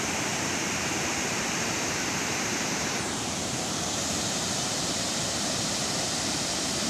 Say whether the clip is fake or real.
fake